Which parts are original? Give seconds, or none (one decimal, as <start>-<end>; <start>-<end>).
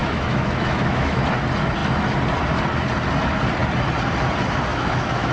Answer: 1.2-4.7